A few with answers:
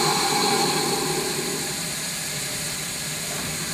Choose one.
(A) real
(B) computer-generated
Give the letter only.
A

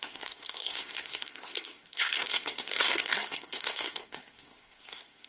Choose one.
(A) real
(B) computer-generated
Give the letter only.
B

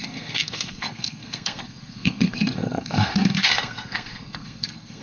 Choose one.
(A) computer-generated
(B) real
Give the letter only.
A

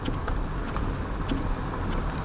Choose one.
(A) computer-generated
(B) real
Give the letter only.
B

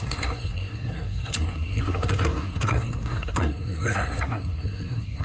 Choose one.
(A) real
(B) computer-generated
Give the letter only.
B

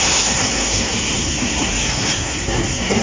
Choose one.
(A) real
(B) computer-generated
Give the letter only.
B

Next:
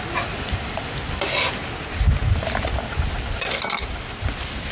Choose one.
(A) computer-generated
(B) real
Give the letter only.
B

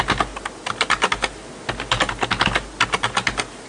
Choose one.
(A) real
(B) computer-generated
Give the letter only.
A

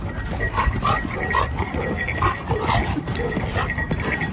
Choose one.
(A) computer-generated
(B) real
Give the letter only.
B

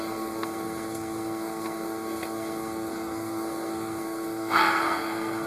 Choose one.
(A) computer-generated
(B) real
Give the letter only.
A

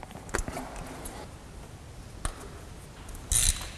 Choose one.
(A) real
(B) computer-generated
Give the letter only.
A